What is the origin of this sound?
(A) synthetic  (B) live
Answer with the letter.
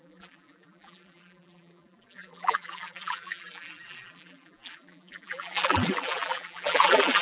A